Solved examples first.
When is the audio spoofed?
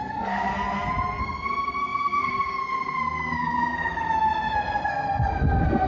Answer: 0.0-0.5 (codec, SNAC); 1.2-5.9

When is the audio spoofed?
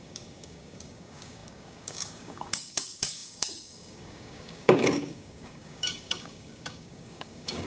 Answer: 0.0-7.7 (codec, DAC)